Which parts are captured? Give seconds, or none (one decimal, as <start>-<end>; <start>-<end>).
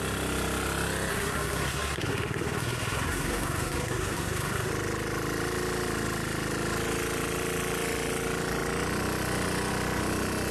0.0-1.1; 4.7-10.5